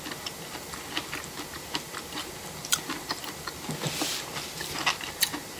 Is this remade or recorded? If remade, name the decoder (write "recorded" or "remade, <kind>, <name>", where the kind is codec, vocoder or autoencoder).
recorded